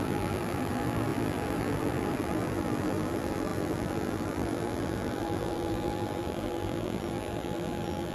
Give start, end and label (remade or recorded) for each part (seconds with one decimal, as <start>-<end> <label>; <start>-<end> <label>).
0.0-8.1 remade